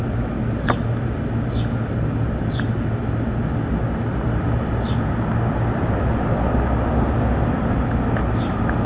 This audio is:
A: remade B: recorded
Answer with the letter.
B